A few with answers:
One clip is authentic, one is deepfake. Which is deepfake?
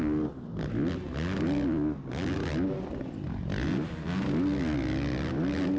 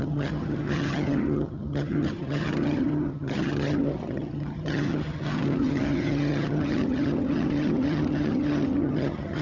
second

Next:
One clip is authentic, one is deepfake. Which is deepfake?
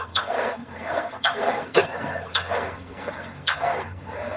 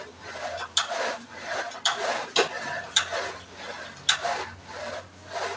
first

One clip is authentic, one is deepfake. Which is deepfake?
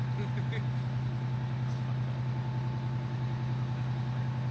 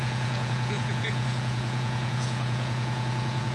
second